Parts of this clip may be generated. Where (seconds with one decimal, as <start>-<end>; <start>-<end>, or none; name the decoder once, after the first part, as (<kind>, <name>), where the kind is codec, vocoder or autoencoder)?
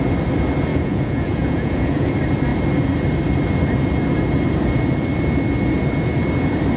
0.7-2.1 (vocoder, Vocos)